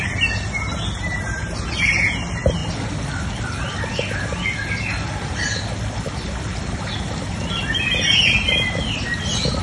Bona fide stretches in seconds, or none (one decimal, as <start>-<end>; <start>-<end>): 0.0-9.6